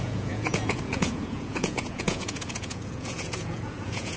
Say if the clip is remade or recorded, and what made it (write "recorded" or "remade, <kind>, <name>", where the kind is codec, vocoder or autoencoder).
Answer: remade, vocoder, Vocos